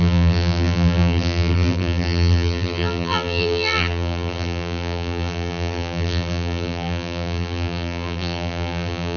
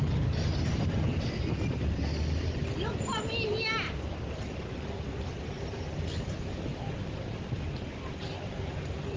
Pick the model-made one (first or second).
first